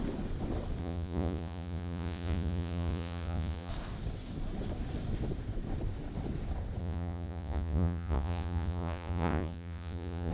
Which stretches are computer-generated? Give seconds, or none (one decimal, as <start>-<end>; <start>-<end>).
0.8-3.7; 6.8-10.3